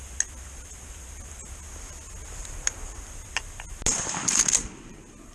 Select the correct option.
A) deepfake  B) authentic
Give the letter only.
B